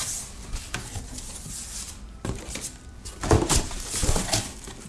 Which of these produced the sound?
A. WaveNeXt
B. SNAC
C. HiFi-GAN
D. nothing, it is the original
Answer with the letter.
D